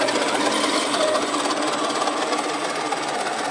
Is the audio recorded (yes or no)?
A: no